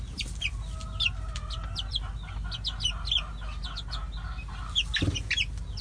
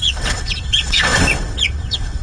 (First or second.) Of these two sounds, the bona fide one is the first